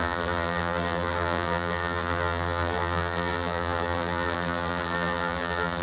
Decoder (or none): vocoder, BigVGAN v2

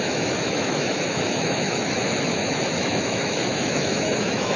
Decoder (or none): autoencoder, DAC-VAE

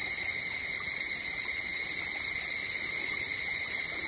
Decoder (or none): none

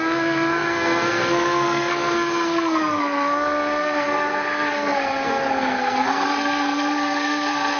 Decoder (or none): codec, SNAC